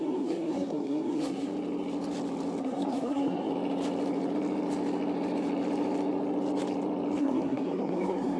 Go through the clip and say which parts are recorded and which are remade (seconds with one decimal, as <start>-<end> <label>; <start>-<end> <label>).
0.0-1.5 remade; 1.5-2.6 recorded; 2.6-3.5 remade; 3.5-7.2 recorded; 7.2-8.4 remade